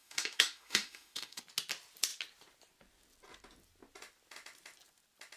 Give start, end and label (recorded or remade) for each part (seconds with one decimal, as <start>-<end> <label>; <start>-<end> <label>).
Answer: 0.0-1.4 remade; 1.4-5.4 recorded